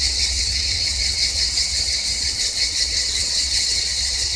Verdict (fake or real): fake